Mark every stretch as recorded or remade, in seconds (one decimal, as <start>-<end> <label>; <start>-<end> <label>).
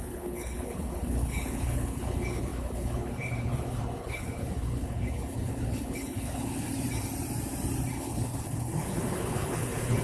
0.0-6.7 remade; 6.7-7.9 recorded; 7.9-10.0 remade